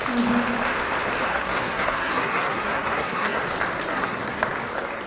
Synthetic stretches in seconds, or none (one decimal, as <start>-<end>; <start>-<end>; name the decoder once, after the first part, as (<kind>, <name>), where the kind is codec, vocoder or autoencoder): 1.3-3.4 (codec, SNAC); 3.9-4.5